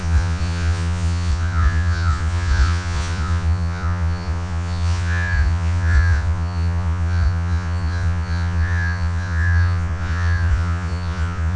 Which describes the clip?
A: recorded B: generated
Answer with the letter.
B